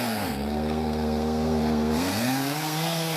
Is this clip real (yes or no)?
no